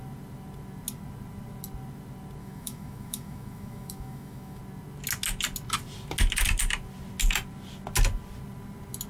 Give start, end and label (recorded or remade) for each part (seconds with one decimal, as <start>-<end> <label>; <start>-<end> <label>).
0.0-2.4 recorded; 2.4-4.6 remade; 4.6-9.1 recorded